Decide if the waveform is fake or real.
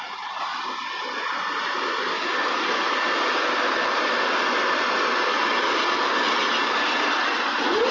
real